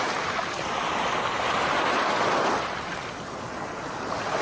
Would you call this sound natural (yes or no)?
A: yes